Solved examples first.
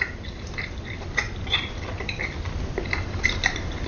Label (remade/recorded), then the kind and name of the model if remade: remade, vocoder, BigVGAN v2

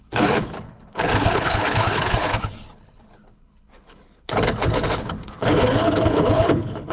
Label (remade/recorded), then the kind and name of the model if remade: remade, codec, HILCodec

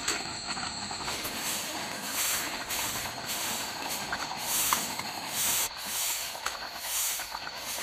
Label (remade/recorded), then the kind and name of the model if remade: remade, autoencoder, DAC-VAE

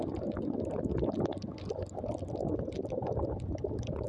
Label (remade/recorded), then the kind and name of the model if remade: recorded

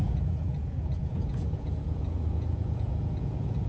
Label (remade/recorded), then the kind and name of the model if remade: remade, vocoder, Vocos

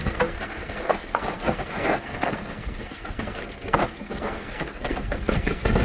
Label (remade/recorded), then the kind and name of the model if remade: remade, codec, SNAC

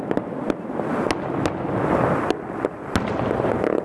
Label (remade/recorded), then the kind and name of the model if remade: recorded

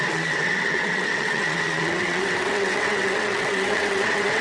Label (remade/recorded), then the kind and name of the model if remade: remade, vocoder, WaveNeXt